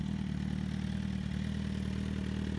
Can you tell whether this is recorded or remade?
recorded